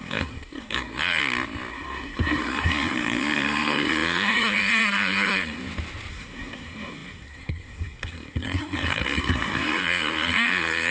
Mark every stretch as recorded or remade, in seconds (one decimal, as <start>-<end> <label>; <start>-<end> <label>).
0.0-1.2 remade; 1.2-1.7 recorded; 1.7-5.6 remade; 5.6-6.1 recorded; 6.1-10.9 remade